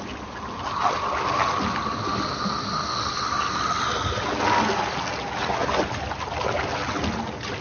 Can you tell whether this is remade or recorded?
recorded